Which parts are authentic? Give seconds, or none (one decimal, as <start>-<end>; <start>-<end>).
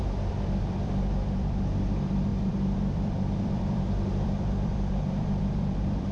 none